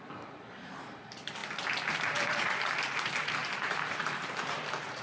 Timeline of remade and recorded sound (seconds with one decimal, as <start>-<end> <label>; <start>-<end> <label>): 0.0-1.4 remade; 1.4-1.9 recorded; 1.9-5.0 remade